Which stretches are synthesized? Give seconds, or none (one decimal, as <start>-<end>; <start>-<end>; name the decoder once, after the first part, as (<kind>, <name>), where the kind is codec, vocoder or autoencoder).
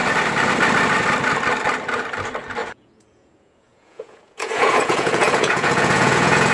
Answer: 2.6-6.5 (vocoder, Vocos)